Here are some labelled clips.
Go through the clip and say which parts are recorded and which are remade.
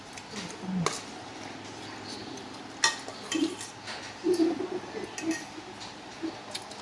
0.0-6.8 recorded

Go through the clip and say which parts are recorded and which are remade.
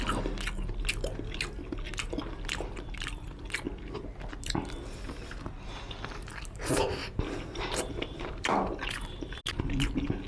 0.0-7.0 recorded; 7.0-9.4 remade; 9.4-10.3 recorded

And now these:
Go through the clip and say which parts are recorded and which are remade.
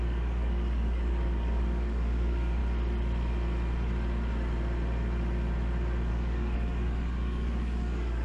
0.0-2.6 remade; 2.6-6.1 recorded; 6.1-8.2 remade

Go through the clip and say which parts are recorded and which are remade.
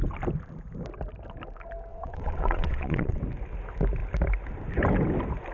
0.0-1.9 recorded; 1.9-3.2 remade; 3.2-5.5 recorded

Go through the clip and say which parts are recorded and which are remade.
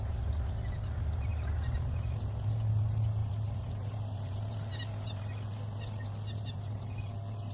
0.0-7.5 recorded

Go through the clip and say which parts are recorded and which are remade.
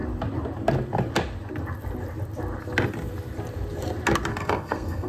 0.0-4.3 recorded; 4.3-5.1 remade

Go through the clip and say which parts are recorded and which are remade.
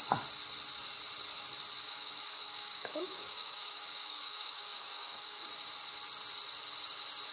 0.0-1.9 recorded; 1.9-5.5 remade; 5.5-7.3 recorded